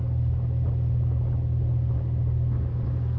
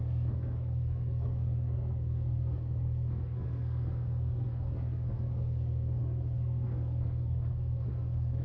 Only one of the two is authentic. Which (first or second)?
first